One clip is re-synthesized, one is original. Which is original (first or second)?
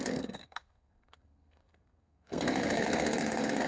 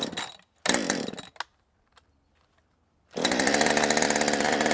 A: second